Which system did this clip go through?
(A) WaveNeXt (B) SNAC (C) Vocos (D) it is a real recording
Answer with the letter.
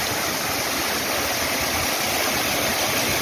D